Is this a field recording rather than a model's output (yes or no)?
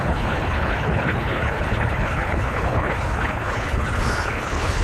no